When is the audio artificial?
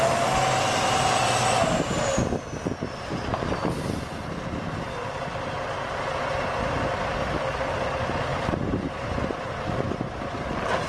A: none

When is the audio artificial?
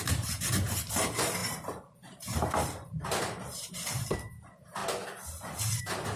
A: 0.0-4.8 (vocoder, BigVGAN v2); 5.8-6.2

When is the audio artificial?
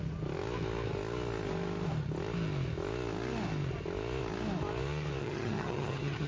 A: 5.2-6.3 (vocoder, HiFi-GAN)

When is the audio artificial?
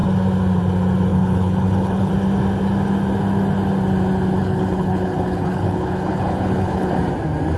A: 1.1-2.1 (codec, HILCodec); 4.4-7.0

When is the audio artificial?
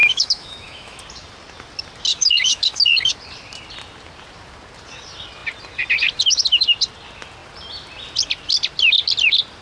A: 0.0-1.0 (autoencoder, DAC-VAE); 2.1-3.1